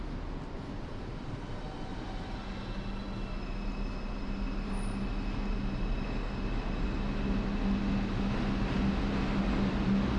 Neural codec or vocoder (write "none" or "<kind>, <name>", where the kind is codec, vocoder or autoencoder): none